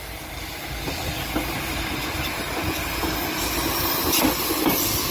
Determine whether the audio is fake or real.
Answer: real